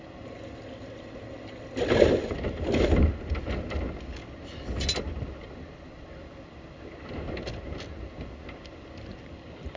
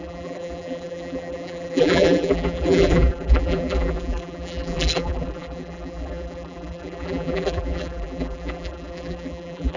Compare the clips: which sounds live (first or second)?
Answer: first